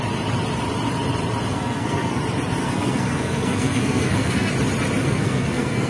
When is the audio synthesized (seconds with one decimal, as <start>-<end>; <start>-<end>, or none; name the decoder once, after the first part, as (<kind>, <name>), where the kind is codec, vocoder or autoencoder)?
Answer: 1.5-2.2 (codec, SNAC); 2.6-4.5; 5.0-5.9